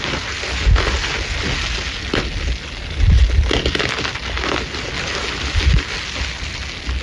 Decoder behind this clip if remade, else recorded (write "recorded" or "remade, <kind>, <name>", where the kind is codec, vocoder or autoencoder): recorded